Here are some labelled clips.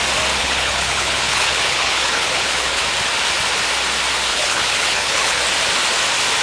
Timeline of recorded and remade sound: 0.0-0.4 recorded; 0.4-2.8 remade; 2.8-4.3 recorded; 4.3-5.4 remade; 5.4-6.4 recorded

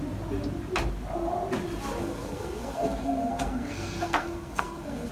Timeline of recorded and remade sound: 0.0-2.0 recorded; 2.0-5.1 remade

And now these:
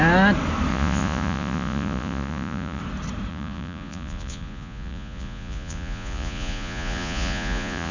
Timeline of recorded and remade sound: 0.0-0.7 recorded; 0.7-2.8 remade; 2.8-3.3 recorded; 3.3-7.9 remade

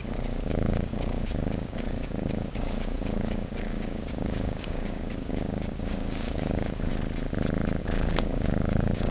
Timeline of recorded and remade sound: 0.0-6.9 remade; 6.9-7.8 recorded; 7.8-9.1 remade

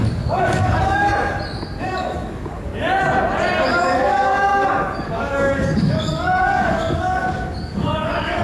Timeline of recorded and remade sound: 0.0-1.1 remade; 1.1-1.8 recorded; 1.8-2.7 remade; 2.7-3.6 recorded; 3.6-8.4 remade

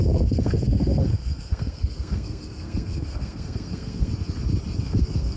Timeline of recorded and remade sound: 0.0-4.1 remade; 4.1-4.8 recorded; 4.8-5.4 remade

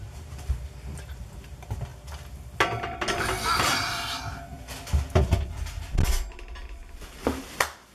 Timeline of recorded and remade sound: 0.0-7.9 recorded